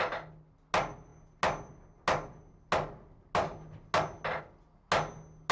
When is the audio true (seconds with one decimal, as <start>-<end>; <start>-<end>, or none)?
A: 0.0-5.5